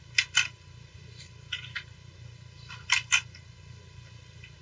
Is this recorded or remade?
recorded